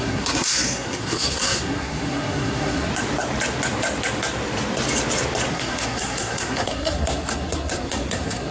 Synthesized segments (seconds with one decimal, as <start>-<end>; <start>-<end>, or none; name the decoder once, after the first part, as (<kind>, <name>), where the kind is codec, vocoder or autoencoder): 0.0-2.9 (codec, SNAC); 5.5-8.5